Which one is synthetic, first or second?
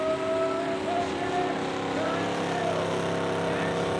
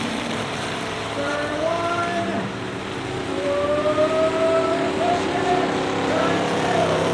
second